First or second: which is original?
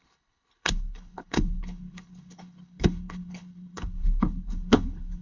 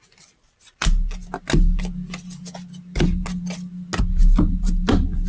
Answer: second